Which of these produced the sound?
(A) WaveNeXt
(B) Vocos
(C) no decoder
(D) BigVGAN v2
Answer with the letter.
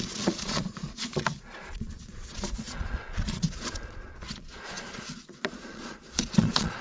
B